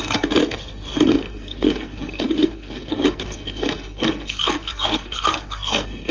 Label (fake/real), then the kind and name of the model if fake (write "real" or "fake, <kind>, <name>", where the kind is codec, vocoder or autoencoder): fake, codec, SNAC